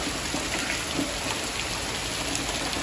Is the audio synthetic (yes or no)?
no